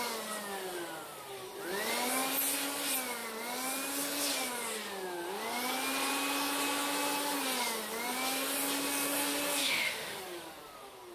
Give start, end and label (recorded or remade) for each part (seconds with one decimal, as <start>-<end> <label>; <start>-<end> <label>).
0.0-9.6 recorded; 9.6-10.2 remade; 10.2-11.1 recorded